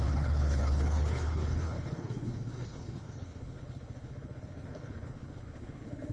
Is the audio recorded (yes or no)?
no